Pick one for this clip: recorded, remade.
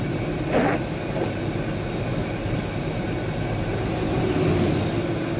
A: recorded